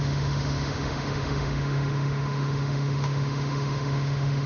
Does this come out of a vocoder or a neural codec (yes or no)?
yes